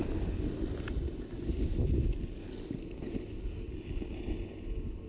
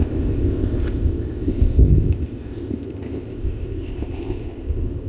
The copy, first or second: second